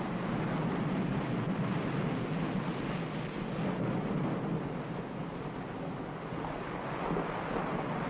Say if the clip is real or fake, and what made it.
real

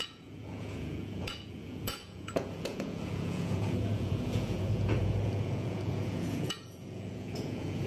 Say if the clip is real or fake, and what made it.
fake, vocoder, Vocos